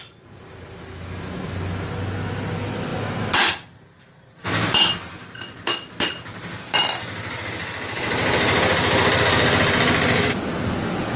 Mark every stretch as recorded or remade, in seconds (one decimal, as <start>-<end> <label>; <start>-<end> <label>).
0.0-11.2 recorded

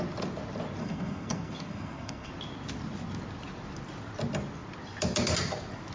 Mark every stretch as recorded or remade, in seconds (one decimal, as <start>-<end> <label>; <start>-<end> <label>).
0.0-0.8 recorded; 0.8-2.3 remade; 2.3-5.9 recorded

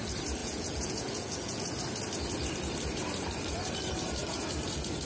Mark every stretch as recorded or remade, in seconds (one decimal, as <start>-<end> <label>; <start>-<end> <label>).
0.0-0.4 recorded; 0.4-1.7 remade; 1.7-5.0 recorded

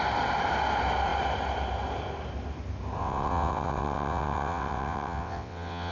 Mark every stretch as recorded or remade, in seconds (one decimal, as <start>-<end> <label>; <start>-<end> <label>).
0.0-3.0 recorded; 3.0-5.9 remade